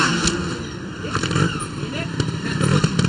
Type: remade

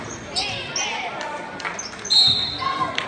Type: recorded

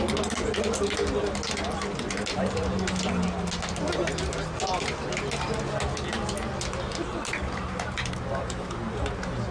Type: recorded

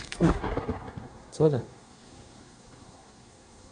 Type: remade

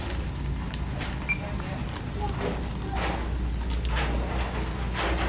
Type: recorded